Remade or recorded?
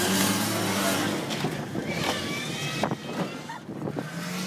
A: recorded